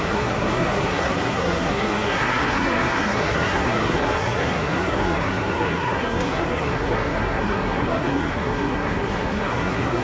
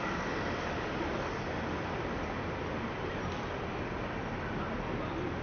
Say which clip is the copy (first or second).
first